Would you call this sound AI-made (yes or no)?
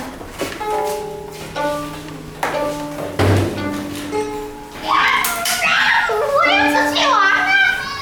no